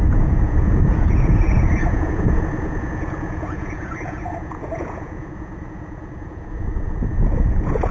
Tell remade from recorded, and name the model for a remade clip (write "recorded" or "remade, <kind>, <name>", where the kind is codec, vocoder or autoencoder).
remade, vocoder, Vocos